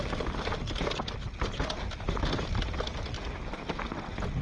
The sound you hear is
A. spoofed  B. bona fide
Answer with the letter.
B